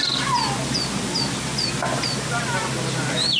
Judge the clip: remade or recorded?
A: recorded